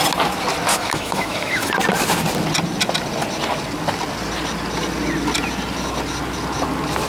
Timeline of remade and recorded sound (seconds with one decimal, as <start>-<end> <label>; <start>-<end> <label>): 0.0-0.7 recorded; 0.7-1.7 remade; 1.7-7.1 recorded